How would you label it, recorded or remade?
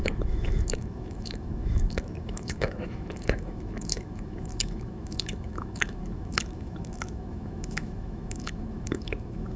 remade